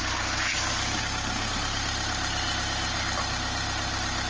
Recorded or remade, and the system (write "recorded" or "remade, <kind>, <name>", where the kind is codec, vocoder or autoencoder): recorded